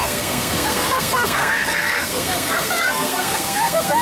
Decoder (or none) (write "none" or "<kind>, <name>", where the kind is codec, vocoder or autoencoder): codec, SNAC